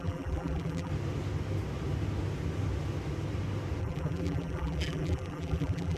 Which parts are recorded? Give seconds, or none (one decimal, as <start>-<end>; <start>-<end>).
0.9-3.8